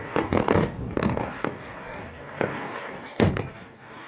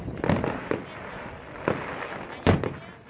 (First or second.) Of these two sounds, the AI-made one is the first